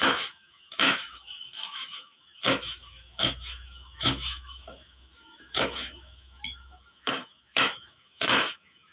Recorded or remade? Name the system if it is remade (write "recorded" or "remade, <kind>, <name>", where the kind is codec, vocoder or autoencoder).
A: remade, autoencoder, DAC-VAE